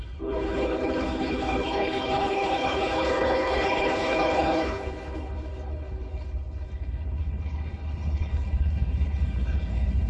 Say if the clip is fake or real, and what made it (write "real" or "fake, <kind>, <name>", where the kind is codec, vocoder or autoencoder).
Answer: fake, codec, HILCodec